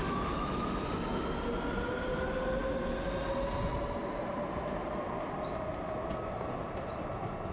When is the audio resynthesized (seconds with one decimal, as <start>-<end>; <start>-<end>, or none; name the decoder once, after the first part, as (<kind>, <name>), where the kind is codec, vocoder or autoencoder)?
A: 0.0-0.8 (autoencoder, DAC-VAE)